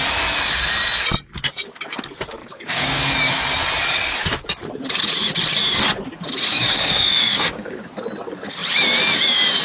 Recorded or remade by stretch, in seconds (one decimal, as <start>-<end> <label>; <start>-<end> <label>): 0.0-2.4 recorded; 2.4-3.0 remade; 3.0-6.5 recorded; 6.5-7.8 remade; 7.8-9.6 recorded